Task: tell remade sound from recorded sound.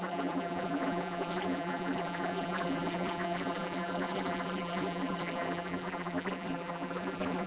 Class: remade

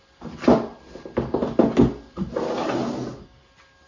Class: recorded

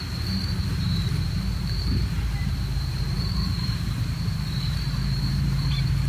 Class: remade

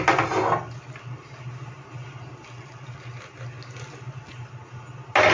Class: recorded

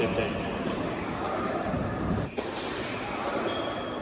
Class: recorded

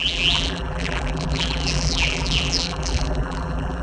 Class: remade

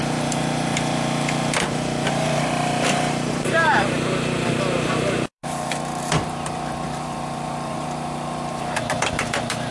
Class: remade